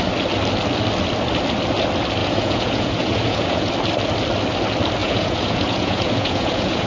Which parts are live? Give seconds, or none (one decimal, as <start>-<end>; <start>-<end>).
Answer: 0.0-2.2; 3.7-5.0